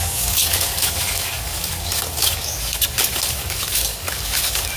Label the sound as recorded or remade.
remade